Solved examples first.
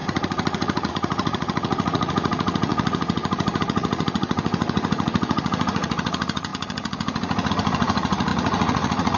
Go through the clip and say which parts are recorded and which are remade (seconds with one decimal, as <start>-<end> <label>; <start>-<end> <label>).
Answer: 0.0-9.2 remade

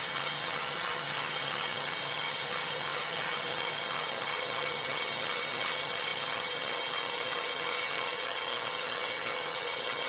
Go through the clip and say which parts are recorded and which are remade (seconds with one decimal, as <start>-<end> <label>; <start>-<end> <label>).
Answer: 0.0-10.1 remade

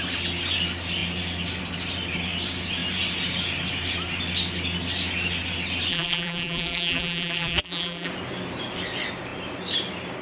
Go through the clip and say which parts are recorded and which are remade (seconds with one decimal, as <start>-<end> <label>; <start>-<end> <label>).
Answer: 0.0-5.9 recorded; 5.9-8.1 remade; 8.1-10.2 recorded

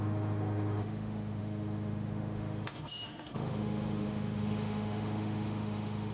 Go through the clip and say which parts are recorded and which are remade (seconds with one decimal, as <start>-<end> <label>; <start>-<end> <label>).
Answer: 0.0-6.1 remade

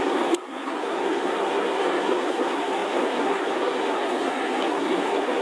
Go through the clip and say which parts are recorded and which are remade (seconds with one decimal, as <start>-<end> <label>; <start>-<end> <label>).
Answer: 0.0-5.4 remade

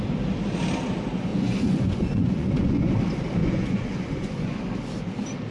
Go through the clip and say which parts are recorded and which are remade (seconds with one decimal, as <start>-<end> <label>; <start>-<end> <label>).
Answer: 0.0-1.3 recorded; 1.3-2.9 remade; 2.9-3.4 recorded; 3.4-4.6 remade; 4.6-5.5 recorded

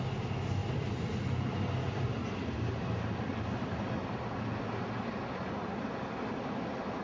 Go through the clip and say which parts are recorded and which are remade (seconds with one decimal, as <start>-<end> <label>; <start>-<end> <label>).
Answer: 0.0-0.6 recorded; 0.6-4.8 remade; 4.8-5.6 recorded; 5.6-6.2 remade; 6.2-7.0 recorded

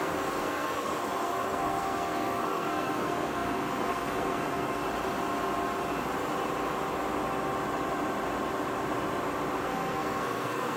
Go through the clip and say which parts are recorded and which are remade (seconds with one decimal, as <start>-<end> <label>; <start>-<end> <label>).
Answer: 0.0-4.8 remade; 4.8-9.6 recorded; 9.6-10.8 remade